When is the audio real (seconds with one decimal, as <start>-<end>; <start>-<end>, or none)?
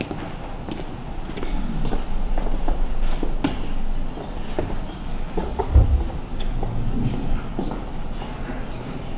0.0-5.1; 5.6-6.3; 7.5-9.2